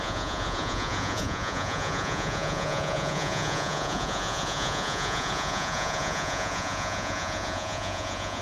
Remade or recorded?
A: remade